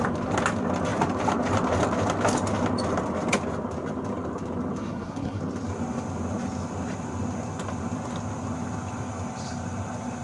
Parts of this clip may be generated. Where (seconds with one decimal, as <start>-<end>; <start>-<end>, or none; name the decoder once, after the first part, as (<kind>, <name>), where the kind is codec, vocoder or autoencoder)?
4.8-5.4 (codec, SNAC)